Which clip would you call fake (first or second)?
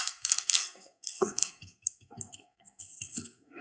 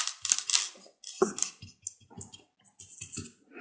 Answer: first